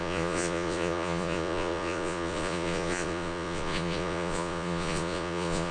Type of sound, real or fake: fake